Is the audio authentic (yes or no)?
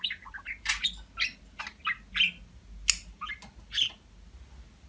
yes